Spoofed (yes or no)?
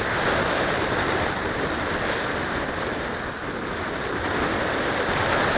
yes